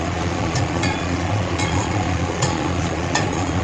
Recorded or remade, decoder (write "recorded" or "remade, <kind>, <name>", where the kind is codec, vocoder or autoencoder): remade, vocoder, Vocos